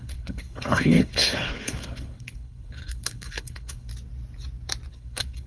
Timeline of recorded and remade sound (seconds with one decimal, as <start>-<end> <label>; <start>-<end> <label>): 0.0-3.9 remade; 3.9-4.9 recorded; 4.9-5.5 remade